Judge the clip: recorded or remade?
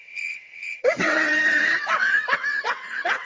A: remade